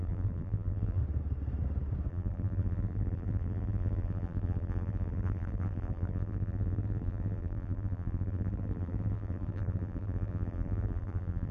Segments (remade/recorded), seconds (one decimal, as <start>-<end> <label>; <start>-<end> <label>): 0.0-1.0 remade; 1.0-2.1 recorded; 2.1-11.5 remade